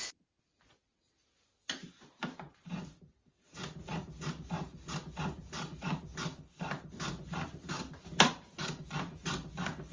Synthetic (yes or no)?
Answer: no